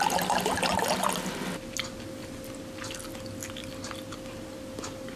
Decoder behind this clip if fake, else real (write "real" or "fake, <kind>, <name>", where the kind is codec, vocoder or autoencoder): real